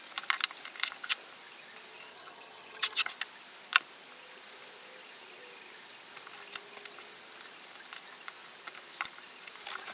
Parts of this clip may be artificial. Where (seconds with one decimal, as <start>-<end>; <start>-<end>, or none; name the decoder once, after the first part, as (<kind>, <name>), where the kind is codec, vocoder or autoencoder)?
2.1-3.1 (vocoder, HiFi-GAN)